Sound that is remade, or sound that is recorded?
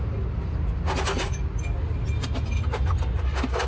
recorded